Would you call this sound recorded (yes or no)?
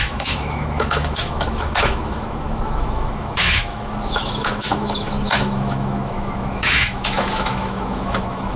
no